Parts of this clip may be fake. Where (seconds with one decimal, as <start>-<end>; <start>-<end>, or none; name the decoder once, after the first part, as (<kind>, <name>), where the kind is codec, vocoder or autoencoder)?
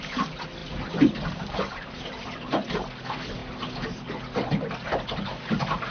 0.6-2.9 (vocoder, BigVGAN v2)